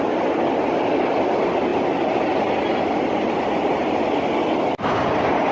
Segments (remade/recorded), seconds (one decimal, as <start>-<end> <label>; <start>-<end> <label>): 0.0-5.5 recorded